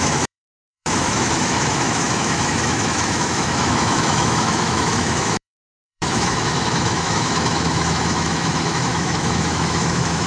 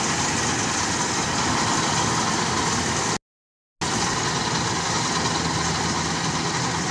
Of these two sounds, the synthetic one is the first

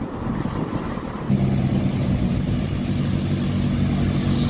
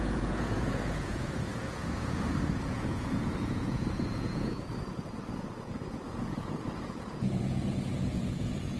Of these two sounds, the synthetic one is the second